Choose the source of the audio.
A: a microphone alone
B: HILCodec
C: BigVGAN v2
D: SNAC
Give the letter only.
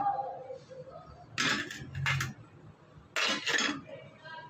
A